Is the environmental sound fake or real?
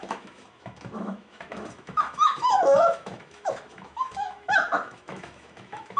fake